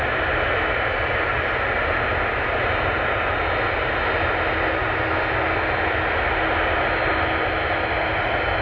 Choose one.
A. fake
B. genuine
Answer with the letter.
B